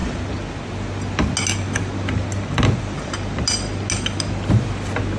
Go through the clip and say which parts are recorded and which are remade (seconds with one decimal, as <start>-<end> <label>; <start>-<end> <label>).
0.0-5.2 recorded